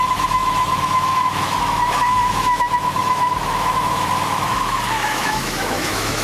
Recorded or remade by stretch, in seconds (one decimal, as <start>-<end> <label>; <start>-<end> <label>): 0.0-6.2 remade